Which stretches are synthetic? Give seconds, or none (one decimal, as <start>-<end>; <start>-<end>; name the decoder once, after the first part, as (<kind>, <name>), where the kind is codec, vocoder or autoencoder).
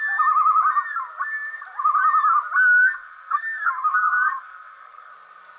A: 2.8-5.1 (codec, SNAC)